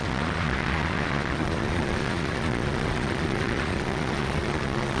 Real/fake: fake